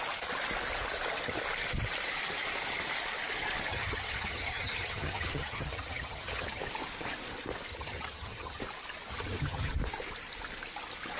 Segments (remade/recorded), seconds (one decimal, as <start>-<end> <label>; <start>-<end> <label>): 0.0-3.7 recorded; 3.7-6.6 remade; 6.6-7.7 recorded; 7.7-8.6 remade; 8.6-9.1 recorded; 9.1-9.7 remade; 9.7-11.2 recorded